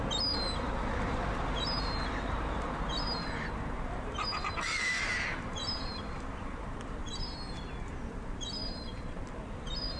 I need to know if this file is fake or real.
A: fake